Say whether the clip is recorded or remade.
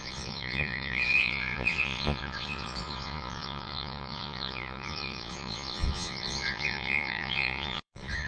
remade